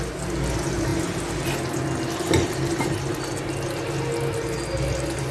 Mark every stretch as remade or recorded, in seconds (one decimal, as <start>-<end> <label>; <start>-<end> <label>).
0.0-5.3 recorded